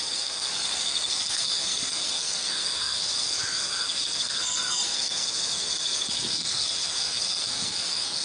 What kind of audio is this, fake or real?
fake